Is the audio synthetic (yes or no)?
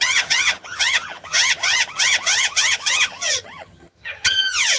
yes